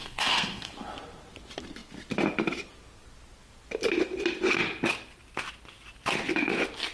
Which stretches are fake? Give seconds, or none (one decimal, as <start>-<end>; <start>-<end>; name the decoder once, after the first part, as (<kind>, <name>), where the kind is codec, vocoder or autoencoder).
0.0-0.7 (codec, SNAC)